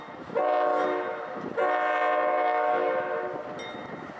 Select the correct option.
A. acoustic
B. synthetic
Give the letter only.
A